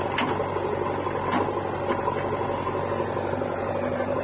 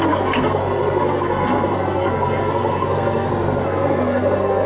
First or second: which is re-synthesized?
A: second